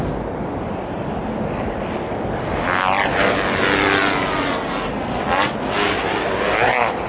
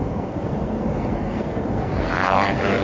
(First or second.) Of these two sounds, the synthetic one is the second